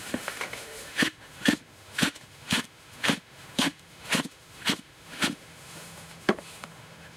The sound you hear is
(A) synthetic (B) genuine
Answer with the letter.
A